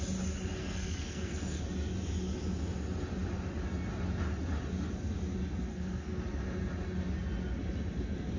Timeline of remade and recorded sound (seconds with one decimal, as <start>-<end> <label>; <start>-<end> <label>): 0.0-0.6 recorded; 0.6-1.6 remade; 1.6-5.7 recorded; 5.7-6.2 remade; 6.2-8.4 recorded